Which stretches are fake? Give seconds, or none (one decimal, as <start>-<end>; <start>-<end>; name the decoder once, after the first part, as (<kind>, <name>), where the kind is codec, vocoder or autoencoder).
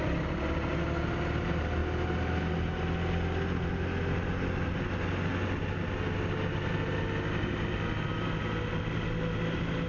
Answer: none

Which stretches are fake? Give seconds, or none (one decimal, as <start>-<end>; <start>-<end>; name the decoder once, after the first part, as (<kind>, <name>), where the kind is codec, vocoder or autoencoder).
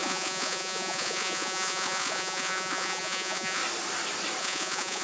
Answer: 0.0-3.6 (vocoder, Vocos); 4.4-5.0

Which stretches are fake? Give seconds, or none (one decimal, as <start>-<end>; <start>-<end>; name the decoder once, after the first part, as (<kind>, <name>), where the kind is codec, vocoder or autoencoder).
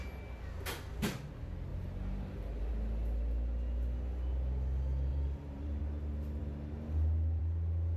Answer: 1.7-2.7 (vocoder, BigVGAN v2); 5.1-5.8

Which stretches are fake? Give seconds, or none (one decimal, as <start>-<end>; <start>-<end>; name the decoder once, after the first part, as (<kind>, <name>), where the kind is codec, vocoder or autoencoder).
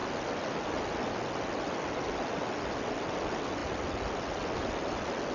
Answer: none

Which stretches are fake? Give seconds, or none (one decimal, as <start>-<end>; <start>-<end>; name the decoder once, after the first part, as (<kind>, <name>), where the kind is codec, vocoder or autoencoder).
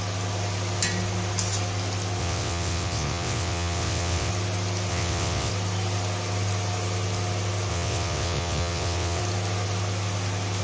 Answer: 2.2-4.3 (vocoder, WaveNeXt); 4.9-5.5; 7.7-9.2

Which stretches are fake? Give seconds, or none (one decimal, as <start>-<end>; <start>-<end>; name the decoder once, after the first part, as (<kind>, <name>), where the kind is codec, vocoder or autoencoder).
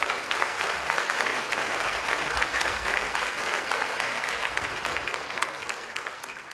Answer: 0.0-6.5 (codec, SNAC)